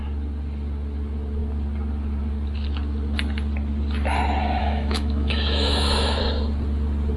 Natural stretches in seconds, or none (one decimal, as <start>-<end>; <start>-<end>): 0.0-4.6; 6.2-7.2